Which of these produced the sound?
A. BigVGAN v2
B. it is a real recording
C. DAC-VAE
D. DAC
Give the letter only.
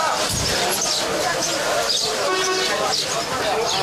B